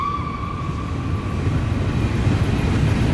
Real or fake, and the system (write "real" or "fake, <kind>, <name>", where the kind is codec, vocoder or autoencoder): real